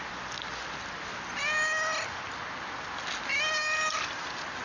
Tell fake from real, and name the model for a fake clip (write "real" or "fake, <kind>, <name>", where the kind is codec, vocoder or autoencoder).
real